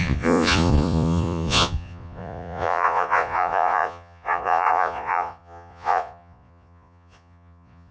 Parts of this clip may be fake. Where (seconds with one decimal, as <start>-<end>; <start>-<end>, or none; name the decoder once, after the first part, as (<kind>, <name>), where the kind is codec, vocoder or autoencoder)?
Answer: 0.0-7.9 (vocoder, Vocos)